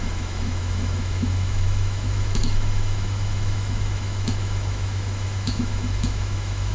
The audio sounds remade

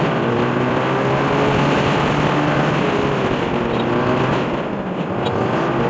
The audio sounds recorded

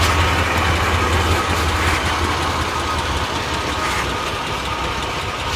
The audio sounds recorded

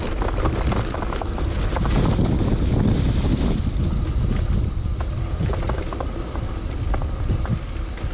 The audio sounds recorded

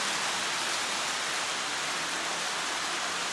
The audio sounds recorded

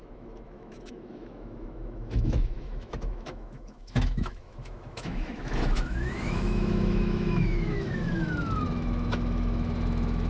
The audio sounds remade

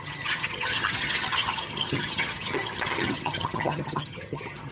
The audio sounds remade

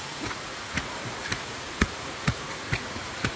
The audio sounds remade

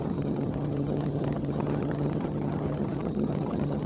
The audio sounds remade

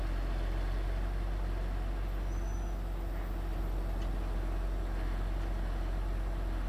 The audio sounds recorded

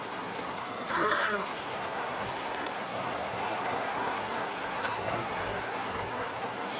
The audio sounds remade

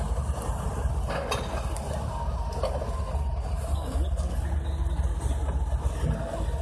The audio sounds recorded